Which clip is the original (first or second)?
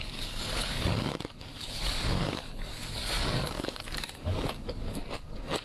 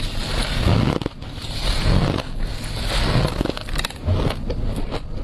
second